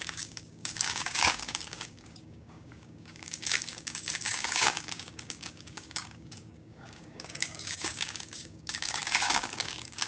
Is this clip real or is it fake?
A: fake